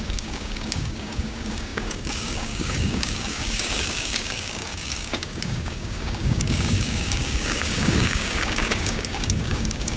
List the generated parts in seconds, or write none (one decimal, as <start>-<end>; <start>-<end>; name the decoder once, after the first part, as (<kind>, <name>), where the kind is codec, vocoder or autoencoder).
0.0-10.0 (codec, DAC)